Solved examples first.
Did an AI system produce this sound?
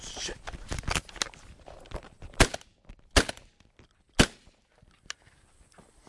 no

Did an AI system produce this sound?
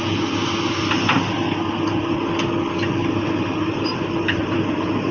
no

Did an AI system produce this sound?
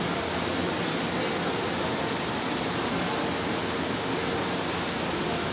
no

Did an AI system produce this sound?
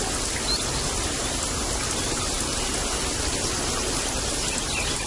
no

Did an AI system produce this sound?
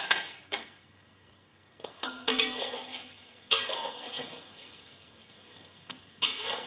yes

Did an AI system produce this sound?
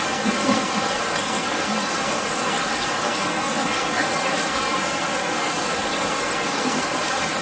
yes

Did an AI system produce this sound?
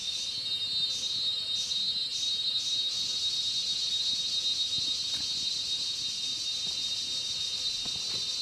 no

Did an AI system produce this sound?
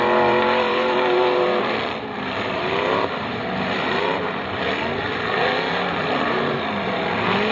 yes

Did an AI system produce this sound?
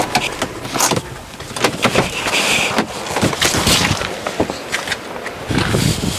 no